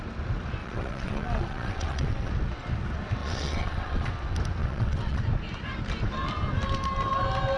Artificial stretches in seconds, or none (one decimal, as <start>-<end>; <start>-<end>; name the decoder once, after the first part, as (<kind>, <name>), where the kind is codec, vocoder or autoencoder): 0.6-2.3 (vocoder, WaveNeXt); 3.2-4.1; 4.6-5.2

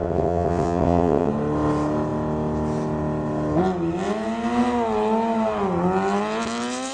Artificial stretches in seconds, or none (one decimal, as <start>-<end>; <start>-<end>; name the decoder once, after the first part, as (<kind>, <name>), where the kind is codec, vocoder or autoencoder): 0.0-1.3 (vocoder, WaveNeXt)

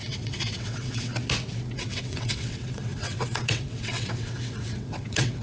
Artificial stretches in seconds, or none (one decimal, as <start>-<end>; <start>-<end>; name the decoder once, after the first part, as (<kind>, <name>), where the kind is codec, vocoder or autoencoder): 0.0-1.1 (vocoder, WaveNeXt); 1.6-5.4

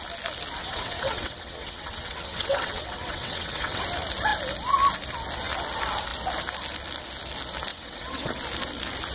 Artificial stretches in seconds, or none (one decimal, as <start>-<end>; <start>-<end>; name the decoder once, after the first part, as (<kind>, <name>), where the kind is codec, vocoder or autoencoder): 0.6-3.8 (vocoder, WaveNeXt); 7.7-8.3

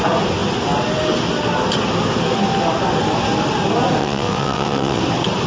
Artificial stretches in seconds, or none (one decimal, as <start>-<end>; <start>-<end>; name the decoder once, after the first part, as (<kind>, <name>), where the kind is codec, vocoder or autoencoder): 4.0-5.0 (vocoder, WaveNeXt)